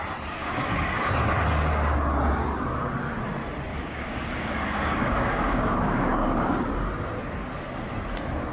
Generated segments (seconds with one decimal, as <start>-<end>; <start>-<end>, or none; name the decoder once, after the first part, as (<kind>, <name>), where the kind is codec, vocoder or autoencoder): 0.4-1.1 (codec, DAC); 3.7-6.7